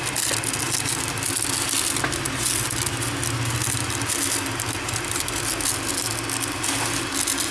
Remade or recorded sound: recorded